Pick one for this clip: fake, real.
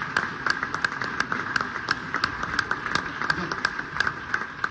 real